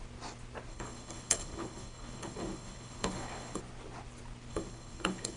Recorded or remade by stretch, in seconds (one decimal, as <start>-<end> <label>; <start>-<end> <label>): 0.0-0.7 recorded; 0.7-3.6 remade; 3.6-4.5 recorded; 4.5-5.4 remade